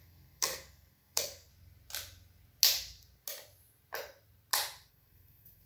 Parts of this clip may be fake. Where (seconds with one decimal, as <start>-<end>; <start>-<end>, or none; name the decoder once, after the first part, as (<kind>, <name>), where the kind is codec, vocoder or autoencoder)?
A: 0.0-1.5 (codec, SNAC); 4.9-5.7

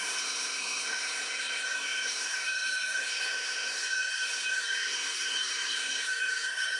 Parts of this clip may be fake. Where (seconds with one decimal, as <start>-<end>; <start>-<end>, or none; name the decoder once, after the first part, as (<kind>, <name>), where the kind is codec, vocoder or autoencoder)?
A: 0.0-6.8 (codec, SNAC)

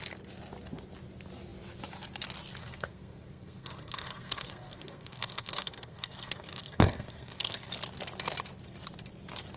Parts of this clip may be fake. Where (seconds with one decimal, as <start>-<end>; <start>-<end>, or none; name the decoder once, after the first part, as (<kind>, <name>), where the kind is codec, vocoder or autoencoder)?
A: 2.6-7.7 (codec, SNAC)

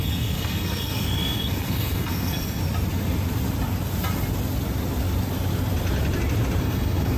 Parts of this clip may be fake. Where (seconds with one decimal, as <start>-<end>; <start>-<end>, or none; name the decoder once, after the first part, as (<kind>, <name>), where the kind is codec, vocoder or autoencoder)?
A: 0.0-2.6 (codec, SNAC); 6.6-7.2

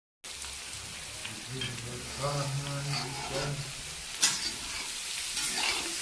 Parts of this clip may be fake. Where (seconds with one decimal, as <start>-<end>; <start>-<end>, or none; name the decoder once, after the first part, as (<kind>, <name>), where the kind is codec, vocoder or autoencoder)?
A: none

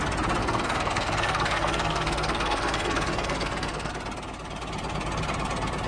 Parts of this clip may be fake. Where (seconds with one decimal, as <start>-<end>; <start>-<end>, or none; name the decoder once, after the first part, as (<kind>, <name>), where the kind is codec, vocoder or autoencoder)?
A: 0.4-3.9 (codec, SNAC)

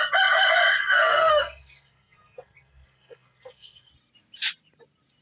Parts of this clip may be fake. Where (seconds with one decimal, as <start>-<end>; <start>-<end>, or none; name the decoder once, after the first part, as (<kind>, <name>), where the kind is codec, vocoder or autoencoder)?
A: 0.8-3.9 (codec, SNAC)

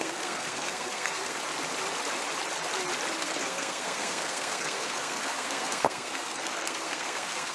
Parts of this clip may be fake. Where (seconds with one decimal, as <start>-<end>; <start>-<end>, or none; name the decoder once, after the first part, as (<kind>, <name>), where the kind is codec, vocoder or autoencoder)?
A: 0.0-1.4 (codec, SNAC); 3.2-7.5